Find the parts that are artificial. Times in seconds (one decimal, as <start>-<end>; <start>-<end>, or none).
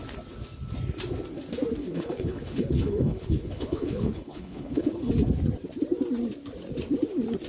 1.8-5.1